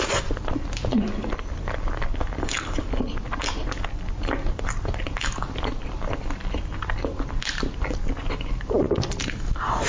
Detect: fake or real real